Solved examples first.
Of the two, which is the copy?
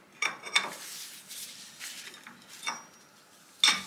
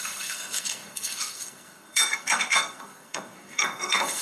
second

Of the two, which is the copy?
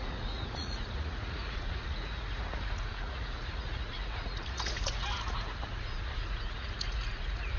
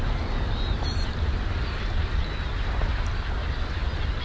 first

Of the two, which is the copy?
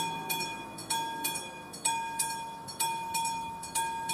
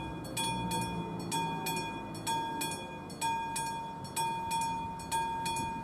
first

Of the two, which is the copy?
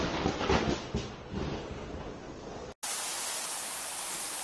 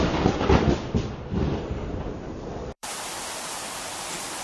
second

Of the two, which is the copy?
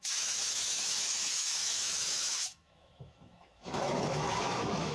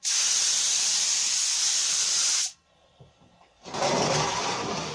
first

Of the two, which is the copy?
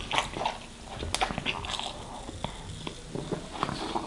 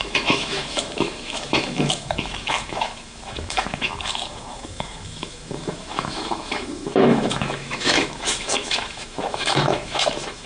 second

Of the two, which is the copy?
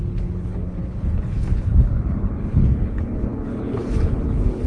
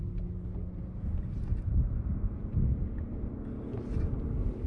first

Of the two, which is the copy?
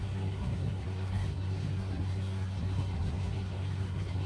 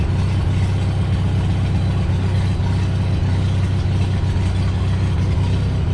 first